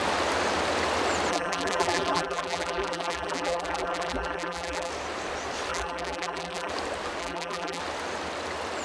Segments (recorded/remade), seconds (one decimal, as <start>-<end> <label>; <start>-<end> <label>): 0.0-1.3 recorded; 1.3-4.9 remade; 4.9-5.7 recorded; 5.7-6.7 remade; 6.7-7.2 recorded; 7.2-7.8 remade; 7.8-8.8 recorded